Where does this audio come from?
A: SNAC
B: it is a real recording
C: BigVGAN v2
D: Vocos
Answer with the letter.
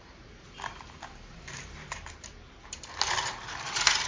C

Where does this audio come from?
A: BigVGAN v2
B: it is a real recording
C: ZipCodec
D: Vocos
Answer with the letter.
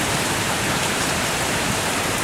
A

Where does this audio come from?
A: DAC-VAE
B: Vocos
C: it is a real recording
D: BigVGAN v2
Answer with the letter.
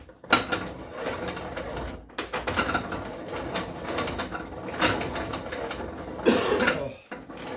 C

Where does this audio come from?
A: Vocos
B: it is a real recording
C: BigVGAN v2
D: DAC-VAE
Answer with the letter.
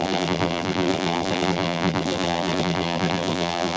C